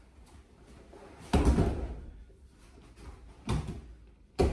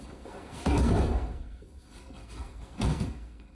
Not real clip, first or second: second